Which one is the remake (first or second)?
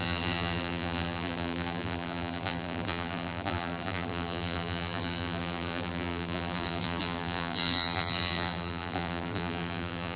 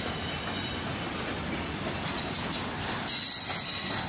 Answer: first